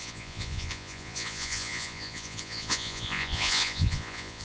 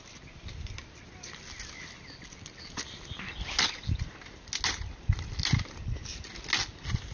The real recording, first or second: second